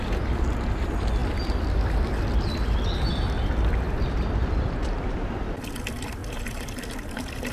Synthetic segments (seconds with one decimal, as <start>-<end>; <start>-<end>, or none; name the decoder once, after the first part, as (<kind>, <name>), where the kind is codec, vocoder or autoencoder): none